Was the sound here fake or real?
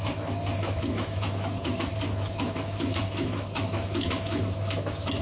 fake